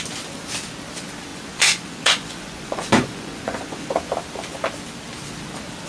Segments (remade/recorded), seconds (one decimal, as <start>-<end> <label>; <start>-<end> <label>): 0.0-1.3 recorded; 1.3-3.9 remade; 3.9-5.9 recorded